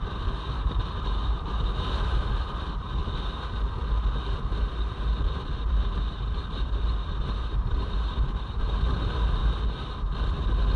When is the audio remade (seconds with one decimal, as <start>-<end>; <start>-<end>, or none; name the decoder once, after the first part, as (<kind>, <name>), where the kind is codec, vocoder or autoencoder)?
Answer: 0.0-3.0 (vocoder, BigVGAN v2); 5.7-9.4